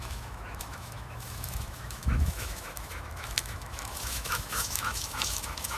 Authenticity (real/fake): fake